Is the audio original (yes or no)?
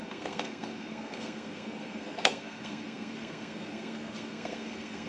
no